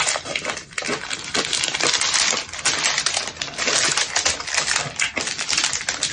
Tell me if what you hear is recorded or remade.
recorded